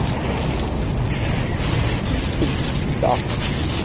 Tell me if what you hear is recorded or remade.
recorded